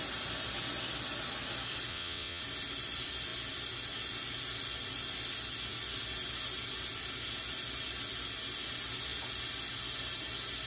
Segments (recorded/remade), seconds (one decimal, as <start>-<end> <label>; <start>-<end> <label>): 0.0-1.9 recorded; 1.9-2.4 remade; 2.4-10.7 recorded